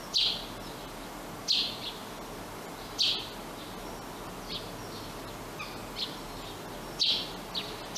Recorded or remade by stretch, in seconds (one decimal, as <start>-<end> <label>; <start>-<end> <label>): 0.0-8.0 recorded